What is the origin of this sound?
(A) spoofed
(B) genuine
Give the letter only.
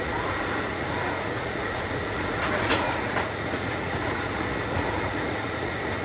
A